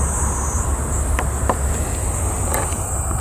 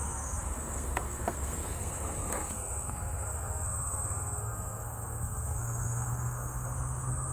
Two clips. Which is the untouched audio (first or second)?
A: first